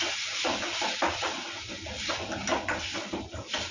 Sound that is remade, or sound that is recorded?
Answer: recorded